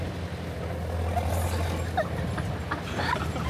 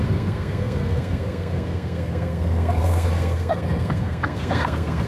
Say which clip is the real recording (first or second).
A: first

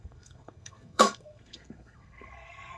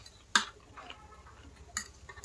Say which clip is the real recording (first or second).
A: second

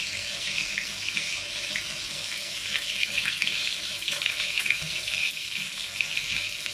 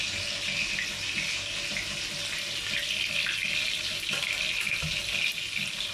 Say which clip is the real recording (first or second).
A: second